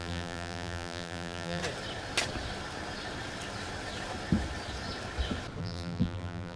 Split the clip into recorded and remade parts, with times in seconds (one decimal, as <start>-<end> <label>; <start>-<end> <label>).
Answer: 0.0-1.6 remade; 1.6-5.6 recorded; 5.6-6.6 remade